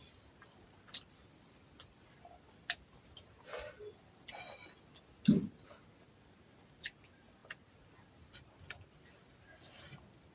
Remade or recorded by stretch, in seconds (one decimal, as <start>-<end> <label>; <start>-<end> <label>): 0.0-10.3 recorded